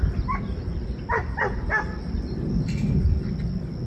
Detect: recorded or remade recorded